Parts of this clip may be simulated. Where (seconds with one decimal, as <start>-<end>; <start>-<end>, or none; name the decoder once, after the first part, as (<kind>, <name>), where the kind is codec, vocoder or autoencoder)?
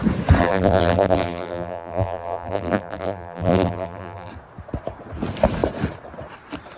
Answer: 0.4-4.3 (vocoder, BigVGAN v2)